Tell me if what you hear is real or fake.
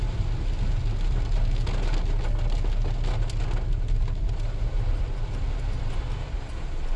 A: real